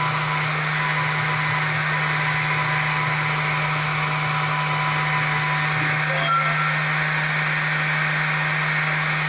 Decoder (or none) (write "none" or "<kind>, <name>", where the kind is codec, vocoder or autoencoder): none